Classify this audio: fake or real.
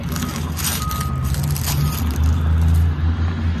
real